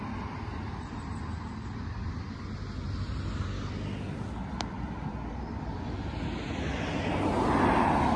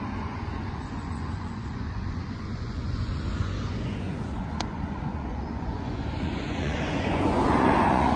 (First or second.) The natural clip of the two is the first